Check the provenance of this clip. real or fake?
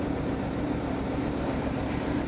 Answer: real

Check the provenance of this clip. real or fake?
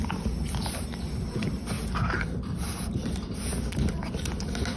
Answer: fake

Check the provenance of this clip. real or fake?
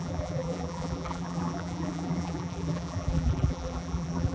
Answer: fake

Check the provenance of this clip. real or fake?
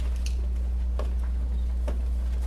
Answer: real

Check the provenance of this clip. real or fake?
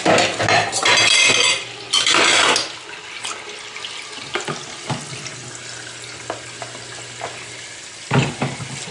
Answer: real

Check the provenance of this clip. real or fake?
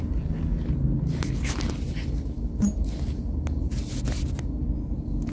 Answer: real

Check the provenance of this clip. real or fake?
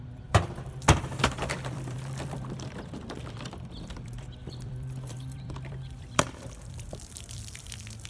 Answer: fake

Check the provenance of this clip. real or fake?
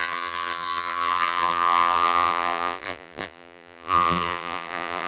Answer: fake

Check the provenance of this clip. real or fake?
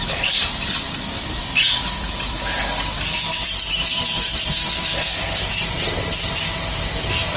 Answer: fake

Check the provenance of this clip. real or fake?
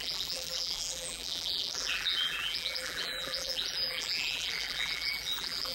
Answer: fake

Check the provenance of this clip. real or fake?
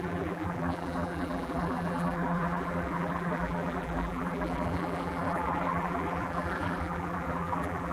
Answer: fake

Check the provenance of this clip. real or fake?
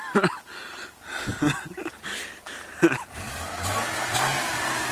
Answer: fake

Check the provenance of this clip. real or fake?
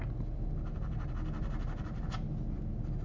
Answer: real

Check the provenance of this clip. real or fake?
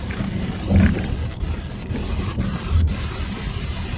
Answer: fake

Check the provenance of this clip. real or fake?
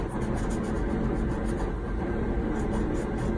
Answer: real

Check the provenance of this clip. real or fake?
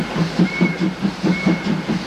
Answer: fake